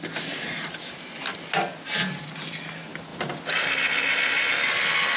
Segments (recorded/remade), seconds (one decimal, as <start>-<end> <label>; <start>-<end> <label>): 0.0-5.2 recorded